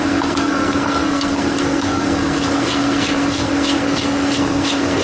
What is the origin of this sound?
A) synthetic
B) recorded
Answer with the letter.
A